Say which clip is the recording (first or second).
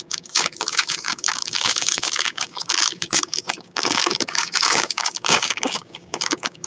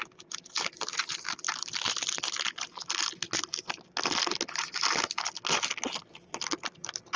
second